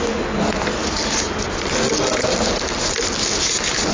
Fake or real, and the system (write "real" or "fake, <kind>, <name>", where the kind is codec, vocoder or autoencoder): real